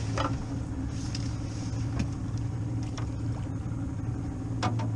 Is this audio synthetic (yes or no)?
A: no